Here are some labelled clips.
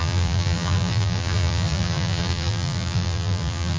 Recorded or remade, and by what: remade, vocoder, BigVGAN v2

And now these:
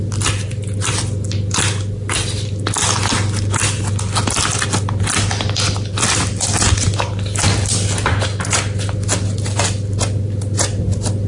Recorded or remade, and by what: recorded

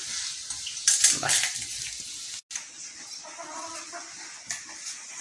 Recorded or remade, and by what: recorded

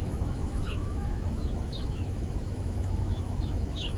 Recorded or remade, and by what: remade, autoencoder, DAC-VAE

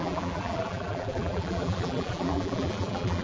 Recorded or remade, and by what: remade, vocoder, BigVGAN v2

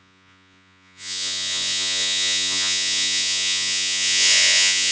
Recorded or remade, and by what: remade, vocoder, Vocos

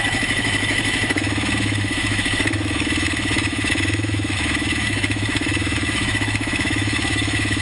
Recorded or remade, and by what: remade, autoencoder, DAC-VAE